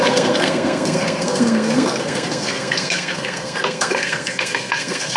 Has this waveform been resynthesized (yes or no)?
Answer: yes